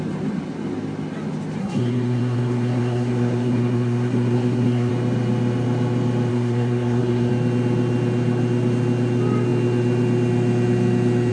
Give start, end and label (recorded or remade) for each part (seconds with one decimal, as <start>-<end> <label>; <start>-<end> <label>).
0.0-1.6 recorded; 1.6-4.9 remade; 4.9-6.3 recorded; 6.3-7.3 remade; 7.3-11.3 recorded